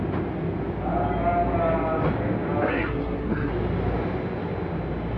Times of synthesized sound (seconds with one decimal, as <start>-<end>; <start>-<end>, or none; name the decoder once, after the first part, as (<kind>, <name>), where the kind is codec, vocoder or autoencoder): 2.7-3.5 (codec, SNAC)

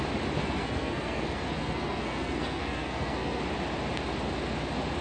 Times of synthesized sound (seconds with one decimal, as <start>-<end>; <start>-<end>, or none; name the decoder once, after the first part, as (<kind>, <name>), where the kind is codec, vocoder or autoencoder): 0.4-3.4 (codec, SNAC)